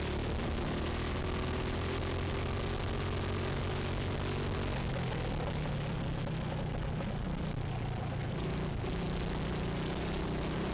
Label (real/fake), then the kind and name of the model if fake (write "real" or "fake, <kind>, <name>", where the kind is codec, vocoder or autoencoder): real